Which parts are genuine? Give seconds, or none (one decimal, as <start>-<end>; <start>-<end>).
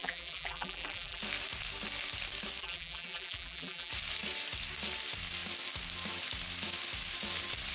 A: 1.2-2.6; 3.9-7.7